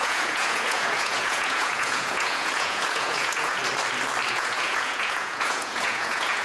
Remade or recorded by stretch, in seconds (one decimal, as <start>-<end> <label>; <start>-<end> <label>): 0.0-3.6 remade; 3.6-4.3 recorded; 4.3-6.4 remade